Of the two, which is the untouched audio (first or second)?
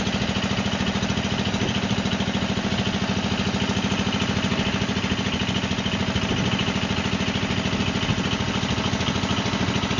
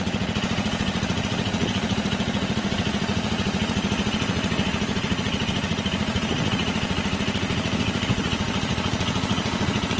first